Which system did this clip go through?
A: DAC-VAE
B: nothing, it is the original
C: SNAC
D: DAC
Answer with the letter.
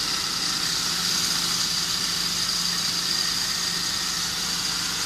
B